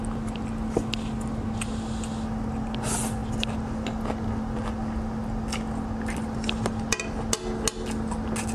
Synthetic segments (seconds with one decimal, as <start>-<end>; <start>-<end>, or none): none